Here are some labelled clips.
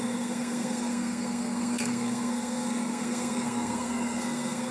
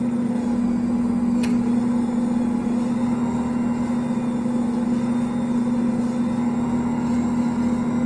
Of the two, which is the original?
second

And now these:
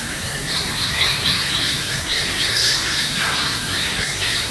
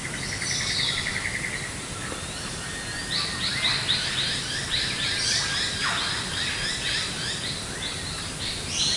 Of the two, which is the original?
second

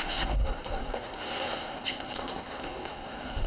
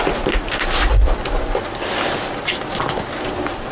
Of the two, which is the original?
second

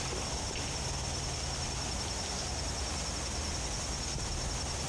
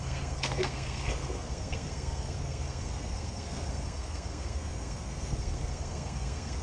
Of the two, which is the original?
first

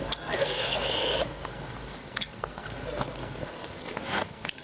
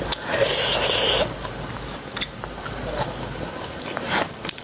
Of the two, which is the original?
second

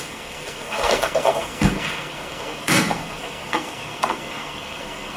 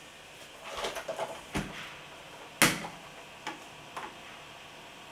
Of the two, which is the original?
second